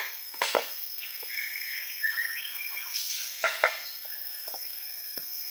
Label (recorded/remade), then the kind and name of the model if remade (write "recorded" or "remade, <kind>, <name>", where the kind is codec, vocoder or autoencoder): remade, codec, SNAC